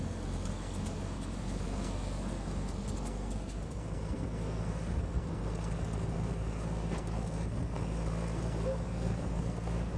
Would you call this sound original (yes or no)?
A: no